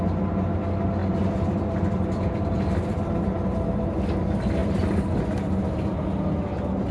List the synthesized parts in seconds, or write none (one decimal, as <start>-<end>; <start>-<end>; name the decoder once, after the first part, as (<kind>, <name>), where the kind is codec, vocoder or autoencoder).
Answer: none